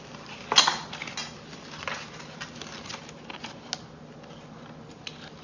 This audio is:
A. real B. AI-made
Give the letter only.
A